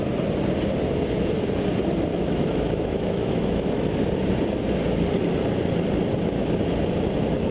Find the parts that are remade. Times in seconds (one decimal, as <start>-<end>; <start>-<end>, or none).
2.1-3.9